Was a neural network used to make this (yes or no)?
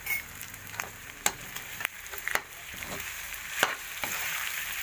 yes